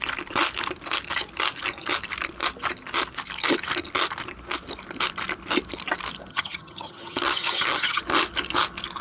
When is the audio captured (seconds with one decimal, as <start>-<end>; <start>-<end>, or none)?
0.0-6.3; 8.0-9.0